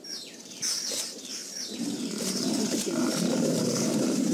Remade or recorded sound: remade